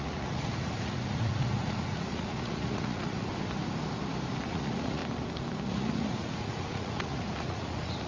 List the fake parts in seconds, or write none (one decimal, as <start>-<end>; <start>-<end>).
0.0-3.3; 4.3-5.0; 5.6-8.1